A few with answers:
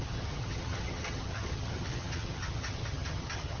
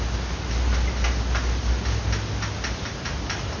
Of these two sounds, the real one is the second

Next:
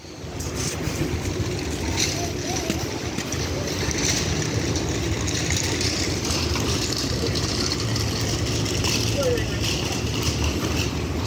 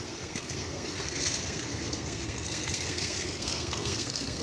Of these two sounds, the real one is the first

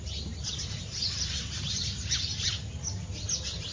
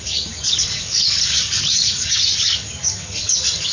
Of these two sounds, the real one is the first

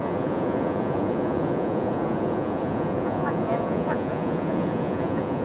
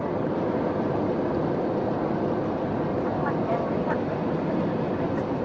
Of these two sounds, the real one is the second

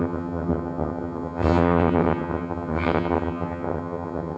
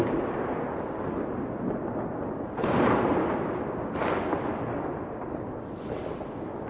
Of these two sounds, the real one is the second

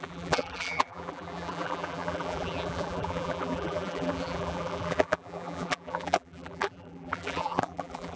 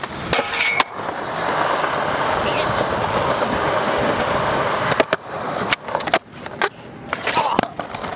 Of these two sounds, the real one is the second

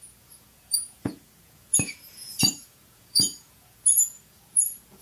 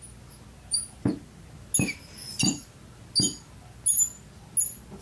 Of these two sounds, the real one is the second